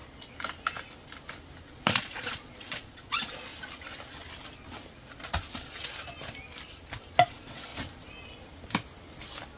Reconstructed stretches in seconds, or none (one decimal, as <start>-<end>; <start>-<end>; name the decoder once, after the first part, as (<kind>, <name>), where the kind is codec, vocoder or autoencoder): 1.7-3.5 (vocoder, Vocos); 7.3-7.7